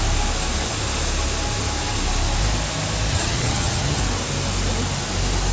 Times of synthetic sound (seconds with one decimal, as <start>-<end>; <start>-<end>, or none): 3.1-4.0